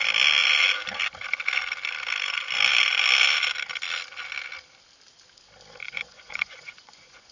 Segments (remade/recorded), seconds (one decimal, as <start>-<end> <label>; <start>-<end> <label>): 0.0-5.8 recorded; 5.8-7.3 remade